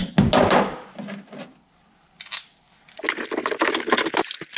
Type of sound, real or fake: real